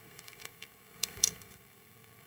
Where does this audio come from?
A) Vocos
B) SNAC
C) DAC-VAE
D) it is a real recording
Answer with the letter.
B